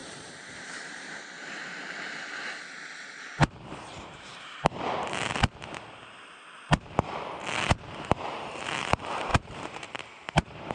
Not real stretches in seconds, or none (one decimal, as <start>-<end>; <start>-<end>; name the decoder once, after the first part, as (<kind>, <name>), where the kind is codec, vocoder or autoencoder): 0.0-1.8 (vocoder, BigVGAN v2); 3.4-4.5; 9.3-10.7